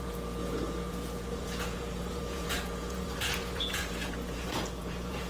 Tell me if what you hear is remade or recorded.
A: remade